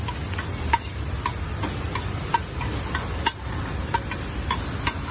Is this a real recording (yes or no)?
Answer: yes